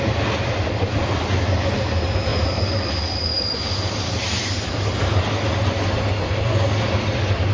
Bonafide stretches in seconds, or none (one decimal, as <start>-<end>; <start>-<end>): 0.0-7.5